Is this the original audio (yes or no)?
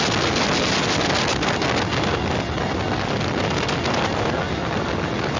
yes